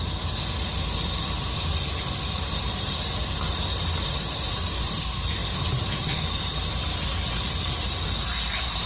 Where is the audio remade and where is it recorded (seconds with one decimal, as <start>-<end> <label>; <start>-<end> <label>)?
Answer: 0.0-3.7 recorded; 3.7-5.0 remade; 5.0-8.9 recorded